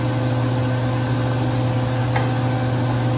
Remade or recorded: recorded